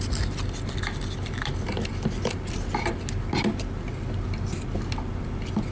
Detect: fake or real real